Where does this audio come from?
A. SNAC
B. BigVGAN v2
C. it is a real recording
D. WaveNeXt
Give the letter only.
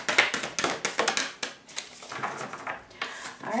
C